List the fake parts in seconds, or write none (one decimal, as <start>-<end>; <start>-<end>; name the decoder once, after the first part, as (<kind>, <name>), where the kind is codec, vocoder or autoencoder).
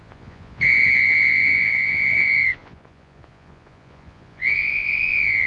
0.0-5.5 (vocoder, Vocos)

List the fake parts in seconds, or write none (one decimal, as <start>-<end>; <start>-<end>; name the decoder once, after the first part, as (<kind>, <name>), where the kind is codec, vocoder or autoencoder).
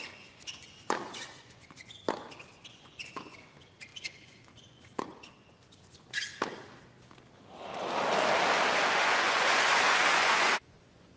0.0-6.3 (vocoder, Vocos); 8.9-11.2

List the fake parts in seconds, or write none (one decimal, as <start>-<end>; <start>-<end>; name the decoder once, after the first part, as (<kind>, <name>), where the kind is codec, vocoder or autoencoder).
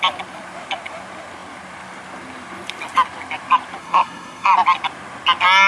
3.8-4.5 (codec, SNAC)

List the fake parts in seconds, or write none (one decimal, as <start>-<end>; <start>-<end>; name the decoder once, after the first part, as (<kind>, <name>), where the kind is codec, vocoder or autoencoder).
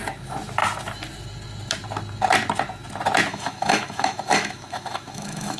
3.3-5.6 (autoencoder, DAC-VAE)